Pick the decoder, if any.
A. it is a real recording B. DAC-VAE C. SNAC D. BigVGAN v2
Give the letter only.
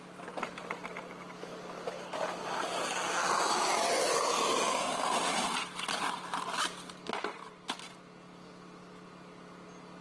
A